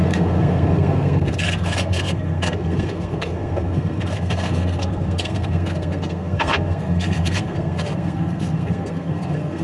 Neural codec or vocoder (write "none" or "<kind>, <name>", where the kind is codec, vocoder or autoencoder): codec, SNAC